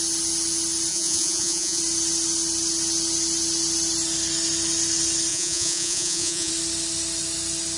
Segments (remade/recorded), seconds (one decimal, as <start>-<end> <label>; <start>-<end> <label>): 0.0-0.9 recorded; 0.9-1.8 remade; 1.8-5.3 recorded; 5.3-6.5 remade; 6.5-7.8 recorded